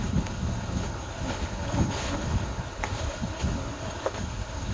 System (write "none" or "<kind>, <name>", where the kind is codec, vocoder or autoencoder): codec, HILCodec